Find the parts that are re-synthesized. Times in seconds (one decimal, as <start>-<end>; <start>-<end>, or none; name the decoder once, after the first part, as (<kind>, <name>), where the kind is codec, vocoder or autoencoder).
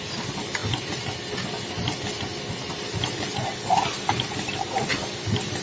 none